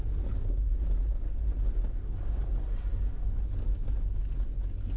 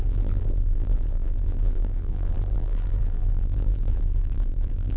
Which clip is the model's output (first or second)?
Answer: second